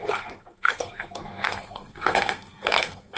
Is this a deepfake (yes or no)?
yes